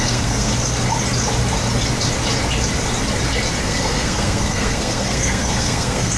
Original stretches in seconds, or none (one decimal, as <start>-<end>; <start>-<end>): 0.5-3.6